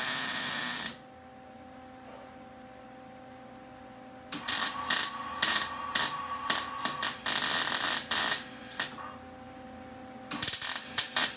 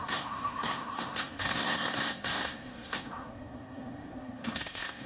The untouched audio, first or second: first